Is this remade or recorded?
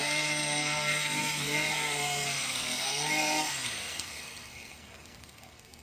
remade